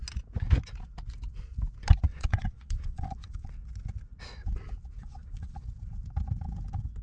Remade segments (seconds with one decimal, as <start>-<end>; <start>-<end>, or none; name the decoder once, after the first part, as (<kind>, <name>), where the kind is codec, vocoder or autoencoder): 2.1-3.5 (vocoder, Vocos); 5.0-5.6

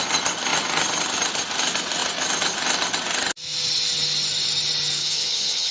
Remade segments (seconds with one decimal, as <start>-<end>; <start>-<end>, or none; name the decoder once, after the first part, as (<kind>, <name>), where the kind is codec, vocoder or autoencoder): 5.0-5.7 (vocoder, HiFi-GAN)

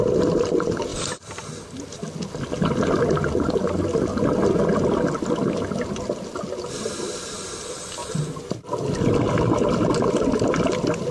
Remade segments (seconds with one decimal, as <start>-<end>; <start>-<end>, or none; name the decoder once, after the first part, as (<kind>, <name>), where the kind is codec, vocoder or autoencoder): 8.0-9.7 (vocoder, BigVGAN v2)

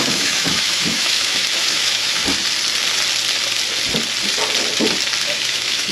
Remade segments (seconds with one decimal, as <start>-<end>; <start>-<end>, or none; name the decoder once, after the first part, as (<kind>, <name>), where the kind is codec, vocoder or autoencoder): 0.0-2.2 (autoencoder, DAC-VAE); 5.2-5.9

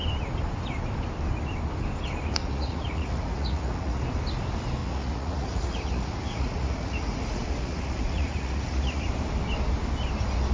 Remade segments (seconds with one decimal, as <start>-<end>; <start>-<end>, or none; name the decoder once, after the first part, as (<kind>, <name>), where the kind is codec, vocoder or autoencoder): 2.4-4.0 (vocoder, Vocos); 4.8-9.1

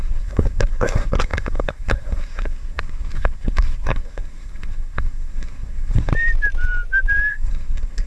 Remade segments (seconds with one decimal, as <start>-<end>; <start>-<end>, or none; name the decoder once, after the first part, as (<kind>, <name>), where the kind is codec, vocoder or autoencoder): 0.0-6.1 (codec, SNAC); 7.3-8.1